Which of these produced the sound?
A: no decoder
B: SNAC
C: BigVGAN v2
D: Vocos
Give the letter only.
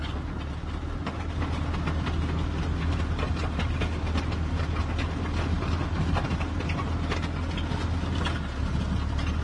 A